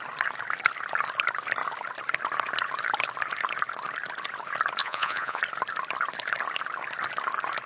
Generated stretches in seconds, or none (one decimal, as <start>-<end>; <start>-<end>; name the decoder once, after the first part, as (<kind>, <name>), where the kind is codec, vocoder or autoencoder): 4.8-5.4 (vocoder, Vocos)